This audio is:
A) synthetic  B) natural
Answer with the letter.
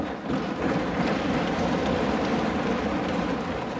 B